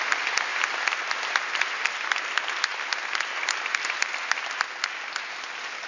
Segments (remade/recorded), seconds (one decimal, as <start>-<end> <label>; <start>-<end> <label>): 0.0-5.9 recorded